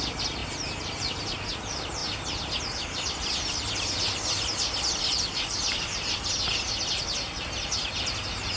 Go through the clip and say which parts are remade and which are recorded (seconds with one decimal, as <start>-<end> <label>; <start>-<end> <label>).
0.0-8.6 recorded